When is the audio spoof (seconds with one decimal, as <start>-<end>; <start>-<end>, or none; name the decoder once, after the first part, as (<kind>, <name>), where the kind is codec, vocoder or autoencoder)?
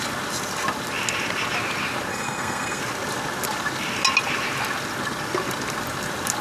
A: 2.1-2.8 (codec, SNAC)